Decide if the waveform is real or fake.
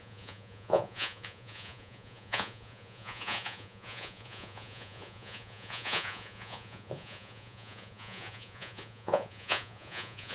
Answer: fake